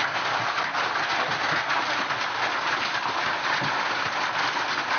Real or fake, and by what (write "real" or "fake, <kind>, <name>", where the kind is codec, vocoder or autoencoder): real